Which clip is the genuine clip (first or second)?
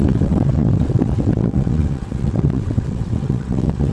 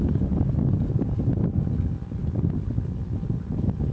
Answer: second